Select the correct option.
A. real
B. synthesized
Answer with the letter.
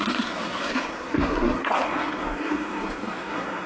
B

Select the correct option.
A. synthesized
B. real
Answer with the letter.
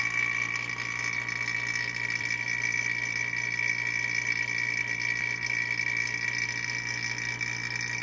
B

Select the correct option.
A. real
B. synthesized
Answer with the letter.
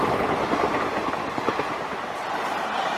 A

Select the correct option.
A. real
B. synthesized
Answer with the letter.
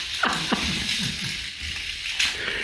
A